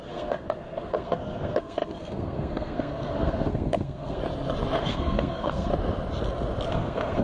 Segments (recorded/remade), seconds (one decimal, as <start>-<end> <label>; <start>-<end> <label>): 0.0-4.2 remade; 4.2-4.8 recorded; 4.8-5.7 remade; 5.7-6.7 recorded; 6.7-7.2 remade